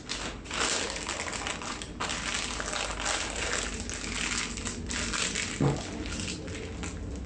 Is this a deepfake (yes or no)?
no